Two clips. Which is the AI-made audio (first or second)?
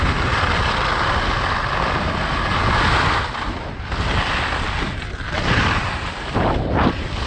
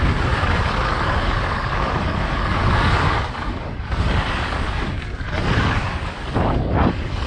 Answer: second